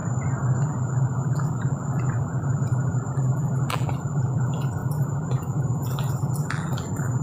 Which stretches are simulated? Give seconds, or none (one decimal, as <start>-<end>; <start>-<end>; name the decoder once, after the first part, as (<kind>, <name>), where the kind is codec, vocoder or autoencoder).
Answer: 0.6-7.2 (vocoder, BigVGAN v2)